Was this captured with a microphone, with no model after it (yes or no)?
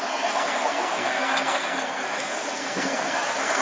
no